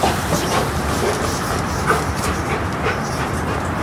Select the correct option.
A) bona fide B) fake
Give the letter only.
A